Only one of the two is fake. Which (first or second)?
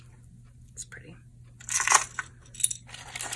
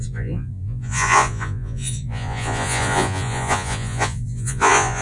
second